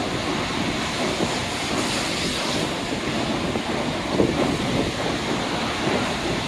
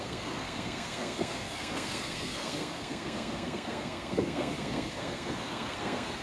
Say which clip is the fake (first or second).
second